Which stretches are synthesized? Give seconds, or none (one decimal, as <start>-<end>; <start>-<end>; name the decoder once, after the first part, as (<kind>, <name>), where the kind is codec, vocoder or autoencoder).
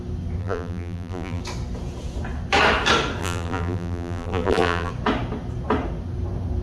0.4-1.4 (vocoder, BigVGAN v2); 3.2-4.9